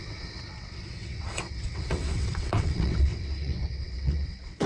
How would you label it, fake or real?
fake